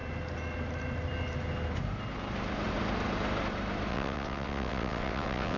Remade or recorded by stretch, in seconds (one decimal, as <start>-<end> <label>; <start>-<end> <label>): 0.0-3.9 recorded; 3.9-5.6 remade